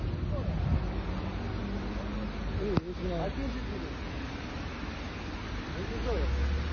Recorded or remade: recorded